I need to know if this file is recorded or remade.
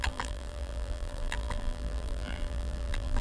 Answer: remade